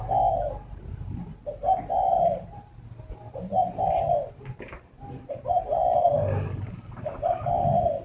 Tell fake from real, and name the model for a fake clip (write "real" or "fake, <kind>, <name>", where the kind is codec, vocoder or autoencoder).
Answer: real